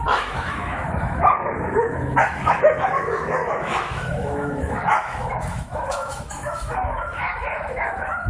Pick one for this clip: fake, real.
fake